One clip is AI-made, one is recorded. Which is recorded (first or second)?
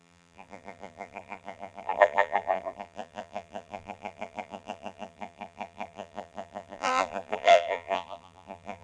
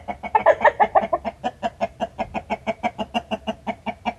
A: second